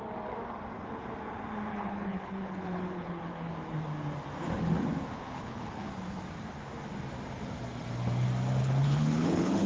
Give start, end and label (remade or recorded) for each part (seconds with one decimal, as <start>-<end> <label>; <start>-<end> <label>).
0.0-1.7 recorded; 1.7-3.5 remade; 3.5-5.1 recorded; 5.1-5.9 remade; 5.9-8.6 recorded; 8.6-9.7 remade